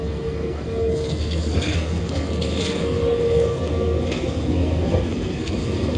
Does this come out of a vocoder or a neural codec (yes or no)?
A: yes